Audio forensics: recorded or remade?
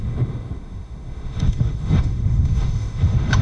remade